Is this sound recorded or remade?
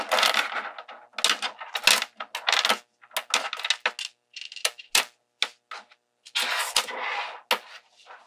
recorded